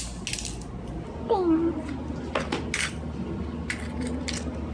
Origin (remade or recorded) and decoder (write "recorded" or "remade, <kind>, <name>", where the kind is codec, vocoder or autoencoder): recorded